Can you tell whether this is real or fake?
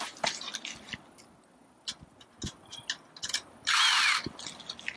real